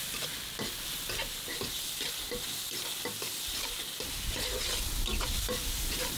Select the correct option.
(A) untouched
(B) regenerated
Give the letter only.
A